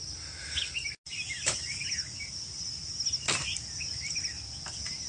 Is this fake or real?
real